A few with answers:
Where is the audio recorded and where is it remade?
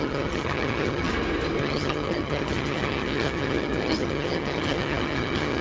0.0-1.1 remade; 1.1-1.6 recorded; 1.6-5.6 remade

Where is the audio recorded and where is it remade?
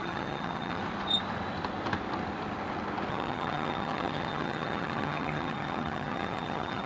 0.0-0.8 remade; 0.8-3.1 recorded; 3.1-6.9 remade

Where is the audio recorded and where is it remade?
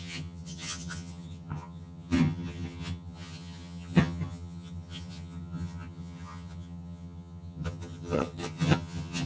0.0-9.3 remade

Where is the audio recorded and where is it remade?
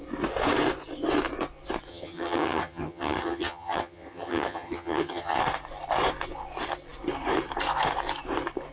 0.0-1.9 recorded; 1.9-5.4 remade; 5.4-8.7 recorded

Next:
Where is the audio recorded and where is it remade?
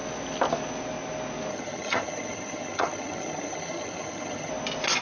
0.0-1.5 recorded; 1.5-4.5 remade; 4.5-5.0 recorded